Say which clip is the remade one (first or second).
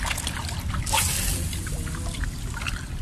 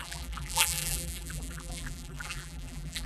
second